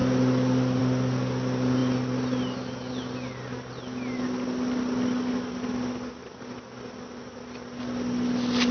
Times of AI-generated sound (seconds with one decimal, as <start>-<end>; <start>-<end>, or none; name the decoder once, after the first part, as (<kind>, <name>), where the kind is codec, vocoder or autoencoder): none